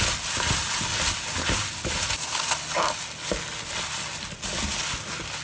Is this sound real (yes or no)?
yes